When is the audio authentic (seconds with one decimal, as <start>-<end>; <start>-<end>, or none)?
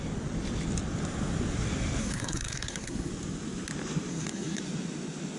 0.0-2.0; 3.1-4.1; 4.6-5.4